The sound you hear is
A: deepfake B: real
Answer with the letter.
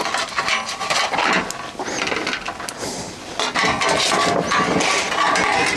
B